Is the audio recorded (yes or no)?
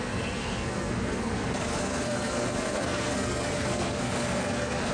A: no